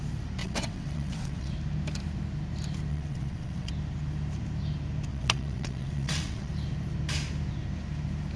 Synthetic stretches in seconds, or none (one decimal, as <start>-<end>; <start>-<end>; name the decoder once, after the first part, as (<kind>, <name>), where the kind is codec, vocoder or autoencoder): 0.4-1.5 (vocoder, WaveNeXt); 2.9-3.7; 5.1-6.5